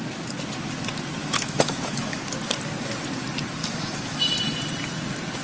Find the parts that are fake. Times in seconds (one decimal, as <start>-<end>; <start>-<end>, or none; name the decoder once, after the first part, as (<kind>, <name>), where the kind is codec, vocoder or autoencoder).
1.2-2.2 (autoencoder, DAC-VAE); 3.6-4.2

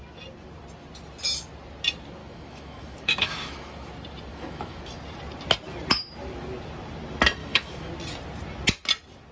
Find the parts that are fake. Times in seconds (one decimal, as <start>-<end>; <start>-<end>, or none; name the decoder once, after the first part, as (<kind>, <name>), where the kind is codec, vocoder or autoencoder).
2.2-3.9 (autoencoder, DAC-VAE); 4.3-4.8; 7.4-7.9

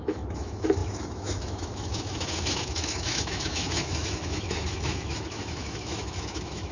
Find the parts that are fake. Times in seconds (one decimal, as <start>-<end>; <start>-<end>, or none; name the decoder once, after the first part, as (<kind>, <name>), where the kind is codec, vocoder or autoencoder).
0.0-6.7 (autoencoder, DAC-VAE)

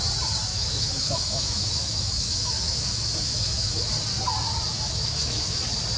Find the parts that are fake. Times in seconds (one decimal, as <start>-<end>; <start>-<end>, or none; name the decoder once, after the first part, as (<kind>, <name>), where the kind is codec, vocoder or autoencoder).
0.5-3.9 (autoencoder, DAC-VAE); 4.7-5.6

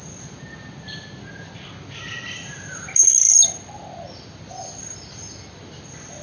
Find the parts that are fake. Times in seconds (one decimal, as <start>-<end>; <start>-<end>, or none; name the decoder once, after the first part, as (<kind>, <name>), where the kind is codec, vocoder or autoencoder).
none

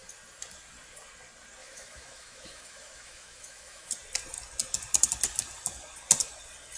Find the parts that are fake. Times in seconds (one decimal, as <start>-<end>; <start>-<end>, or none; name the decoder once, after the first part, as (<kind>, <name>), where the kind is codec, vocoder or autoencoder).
1.6-3.9 (autoencoder, DAC-VAE)